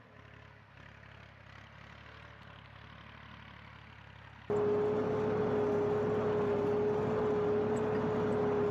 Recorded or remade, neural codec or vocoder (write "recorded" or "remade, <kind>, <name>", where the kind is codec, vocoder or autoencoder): recorded